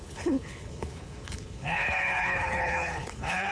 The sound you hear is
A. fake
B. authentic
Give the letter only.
A